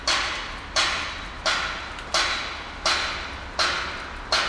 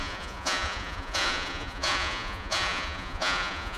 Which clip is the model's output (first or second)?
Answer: second